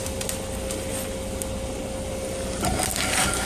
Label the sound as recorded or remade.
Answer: recorded